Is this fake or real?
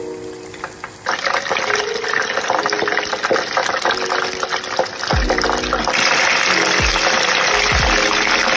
real